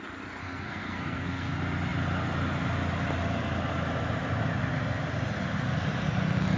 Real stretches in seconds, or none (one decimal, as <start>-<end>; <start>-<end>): 0.0-0.4; 1.5-6.6